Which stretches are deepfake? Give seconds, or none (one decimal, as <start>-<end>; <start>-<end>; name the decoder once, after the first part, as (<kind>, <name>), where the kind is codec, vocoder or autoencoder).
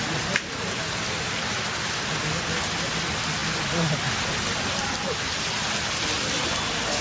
none